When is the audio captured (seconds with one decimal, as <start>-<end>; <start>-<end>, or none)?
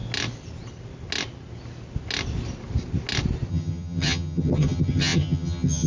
0.0-3.5